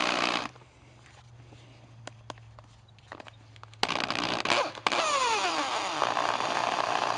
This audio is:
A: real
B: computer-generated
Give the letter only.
A